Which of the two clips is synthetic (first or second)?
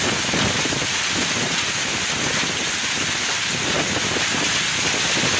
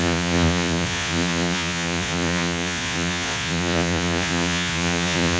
second